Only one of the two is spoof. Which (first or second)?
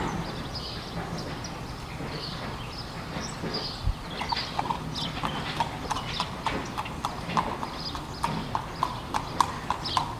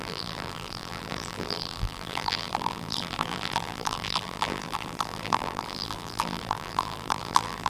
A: second